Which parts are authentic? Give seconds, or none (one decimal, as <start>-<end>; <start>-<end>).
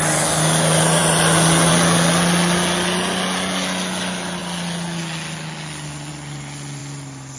0.0-7.4